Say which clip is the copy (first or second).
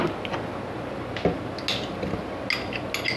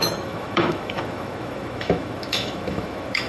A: second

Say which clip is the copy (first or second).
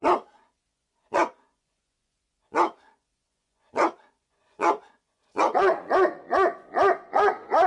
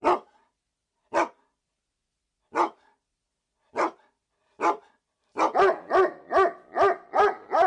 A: first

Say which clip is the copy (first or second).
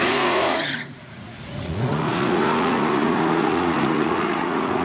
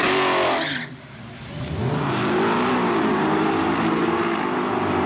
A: first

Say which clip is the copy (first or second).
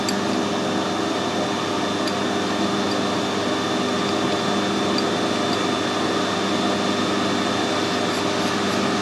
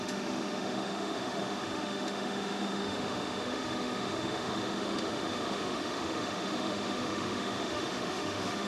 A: second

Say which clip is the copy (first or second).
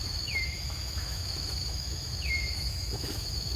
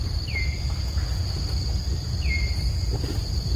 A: first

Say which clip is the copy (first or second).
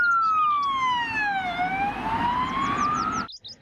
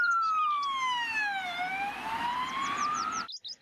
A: second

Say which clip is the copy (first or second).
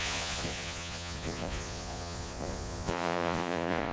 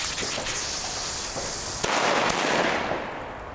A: first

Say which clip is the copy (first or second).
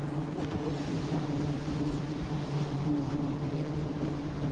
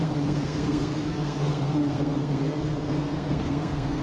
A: second